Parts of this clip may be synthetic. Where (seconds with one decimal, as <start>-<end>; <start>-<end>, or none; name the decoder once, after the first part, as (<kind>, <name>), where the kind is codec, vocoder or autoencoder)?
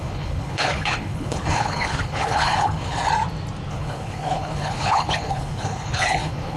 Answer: 0.0-3.0 (codec, HILCodec); 3.7-6.6